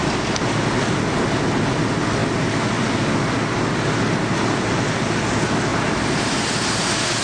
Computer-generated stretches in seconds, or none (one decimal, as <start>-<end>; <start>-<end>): none